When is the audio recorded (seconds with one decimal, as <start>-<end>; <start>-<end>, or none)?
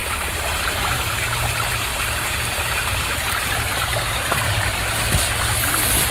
1.1-1.9; 4.9-6.1